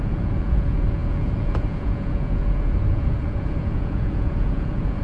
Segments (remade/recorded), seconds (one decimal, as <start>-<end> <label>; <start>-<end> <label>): 0.0-5.0 remade